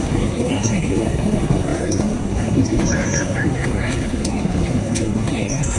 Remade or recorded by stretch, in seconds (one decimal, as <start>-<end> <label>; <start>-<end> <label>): 0.0-5.8 remade